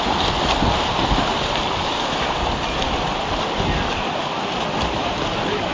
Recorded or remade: recorded